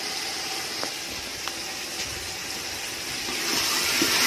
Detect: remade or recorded recorded